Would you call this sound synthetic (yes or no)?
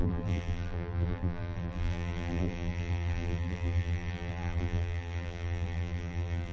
yes